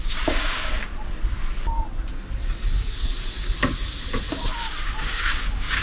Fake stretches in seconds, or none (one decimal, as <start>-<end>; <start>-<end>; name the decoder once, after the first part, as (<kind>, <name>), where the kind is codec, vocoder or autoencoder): 0.0-0.9 (codec, DAC); 4.3-5.8